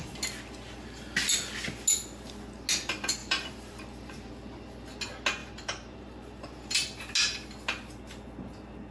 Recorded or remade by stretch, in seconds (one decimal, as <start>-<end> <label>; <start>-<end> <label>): 0.0-3.2 recorded; 3.2-4.3 remade; 4.3-5.4 recorded; 5.4-7.0 remade; 7.0-8.9 recorded

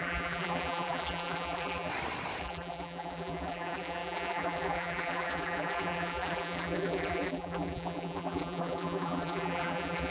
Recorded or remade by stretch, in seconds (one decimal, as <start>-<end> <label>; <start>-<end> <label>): 0.0-1.9 remade; 1.9-2.4 recorded; 2.4-10.1 remade